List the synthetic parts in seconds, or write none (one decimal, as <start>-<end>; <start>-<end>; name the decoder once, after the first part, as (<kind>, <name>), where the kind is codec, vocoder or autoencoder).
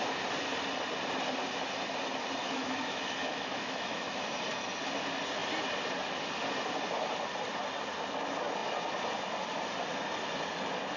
2.4-4.2 (autoencoder, DAC-VAE)